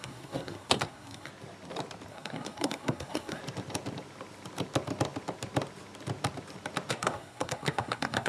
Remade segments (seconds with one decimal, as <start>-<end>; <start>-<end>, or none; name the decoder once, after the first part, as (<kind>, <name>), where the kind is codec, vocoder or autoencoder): 0.0-1.3 (codec, SNAC); 2.1-3.4; 6.9-8.3